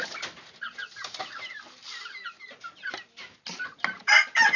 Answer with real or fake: real